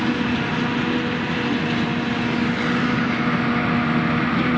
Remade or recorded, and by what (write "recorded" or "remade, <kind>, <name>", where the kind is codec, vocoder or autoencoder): recorded